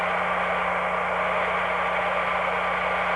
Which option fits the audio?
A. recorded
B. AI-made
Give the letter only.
A